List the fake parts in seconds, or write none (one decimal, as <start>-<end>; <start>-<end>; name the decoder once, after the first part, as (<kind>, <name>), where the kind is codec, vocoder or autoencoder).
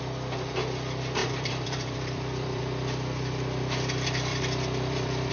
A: 1.2-2.6 (vocoder, BigVGAN v2); 4.3-5.3